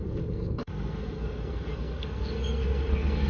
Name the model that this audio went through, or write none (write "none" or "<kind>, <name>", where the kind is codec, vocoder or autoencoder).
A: codec, SNAC